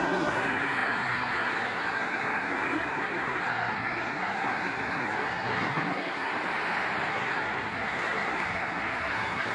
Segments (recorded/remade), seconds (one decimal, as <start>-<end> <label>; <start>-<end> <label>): 0.0-6.3 remade; 6.3-7.1 recorded; 7.1-9.5 remade